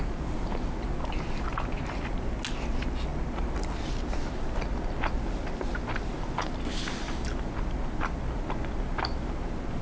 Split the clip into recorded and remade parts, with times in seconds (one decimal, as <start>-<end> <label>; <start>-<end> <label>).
0.0-9.8 recorded